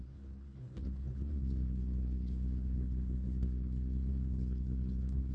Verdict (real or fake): fake